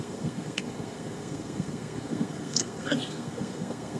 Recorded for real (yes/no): no